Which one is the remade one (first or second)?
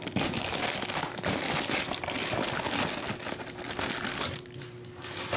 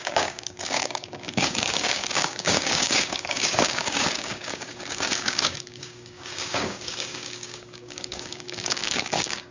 second